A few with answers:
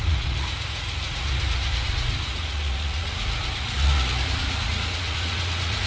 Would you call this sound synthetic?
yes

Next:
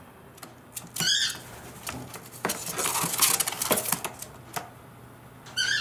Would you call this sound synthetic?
no